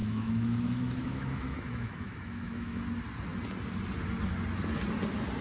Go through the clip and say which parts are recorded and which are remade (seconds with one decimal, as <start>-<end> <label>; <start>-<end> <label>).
0.0-2.8 remade; 2.8-5.4 recorded